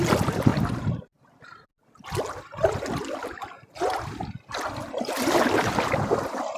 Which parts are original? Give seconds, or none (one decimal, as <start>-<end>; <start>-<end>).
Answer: 0.0-0.5; 1.7-6.6